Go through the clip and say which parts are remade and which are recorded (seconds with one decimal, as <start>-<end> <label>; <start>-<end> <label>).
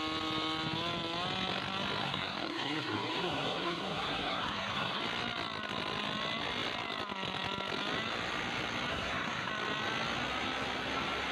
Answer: 0.0-2.0 recorded; 2.0-5.0 remade; 5.0-8.9 recorded; 8.9-9.5 remade; 9.5-11.3 recorded